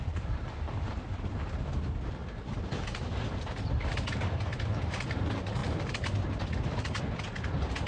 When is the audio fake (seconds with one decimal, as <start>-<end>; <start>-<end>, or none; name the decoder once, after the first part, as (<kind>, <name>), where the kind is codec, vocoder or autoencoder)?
4.5-5.0 (vocoder, BigVGAN v2)